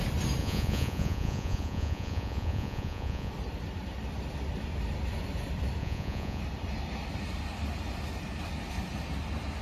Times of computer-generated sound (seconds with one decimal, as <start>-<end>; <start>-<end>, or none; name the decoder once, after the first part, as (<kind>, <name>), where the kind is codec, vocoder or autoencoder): 0.4-3.3 (vocoder, Vocos); 5.8-6.4